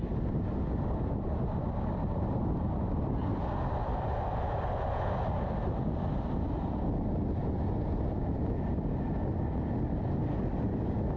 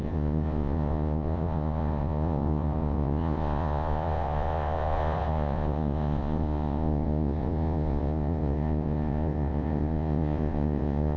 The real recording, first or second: first